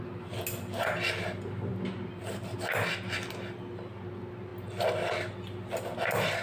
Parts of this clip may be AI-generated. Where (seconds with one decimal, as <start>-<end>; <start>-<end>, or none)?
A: none